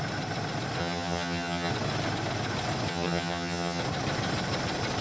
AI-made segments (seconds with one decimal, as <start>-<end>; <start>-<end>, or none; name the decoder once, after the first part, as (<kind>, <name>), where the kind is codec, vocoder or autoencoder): 0.8-1.7 (vocoder, HiFi-GAN); 2.9-3.8